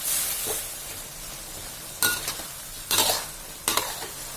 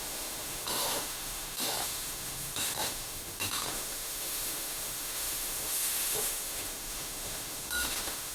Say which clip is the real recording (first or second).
first